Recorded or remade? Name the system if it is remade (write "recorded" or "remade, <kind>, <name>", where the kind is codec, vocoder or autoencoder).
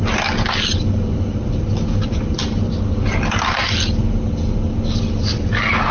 recorded